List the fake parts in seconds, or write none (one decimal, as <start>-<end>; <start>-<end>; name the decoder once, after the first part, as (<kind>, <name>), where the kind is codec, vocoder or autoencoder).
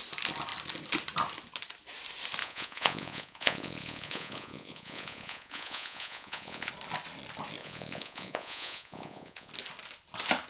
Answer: 2.4-6.7 (vocoder, Vocos); 7.6-9.5